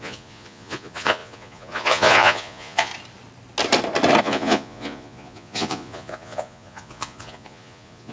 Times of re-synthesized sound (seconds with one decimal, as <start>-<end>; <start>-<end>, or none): 0.0-2.9; 4.2-8.1